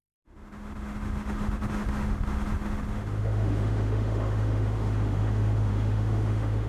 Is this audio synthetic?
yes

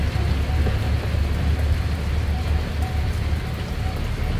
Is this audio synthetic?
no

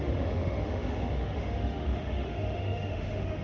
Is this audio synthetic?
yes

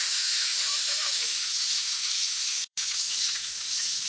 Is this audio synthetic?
yes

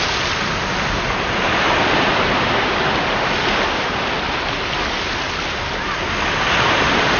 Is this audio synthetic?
no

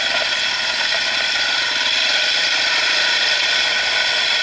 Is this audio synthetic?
no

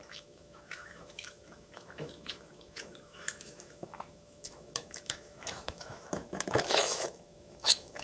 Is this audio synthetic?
yes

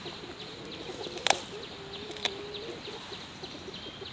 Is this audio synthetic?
no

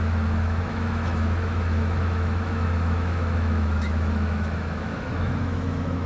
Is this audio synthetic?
yes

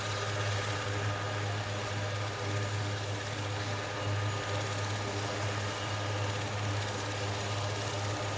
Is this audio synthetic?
no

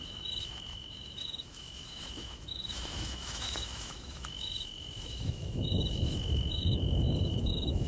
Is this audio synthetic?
yes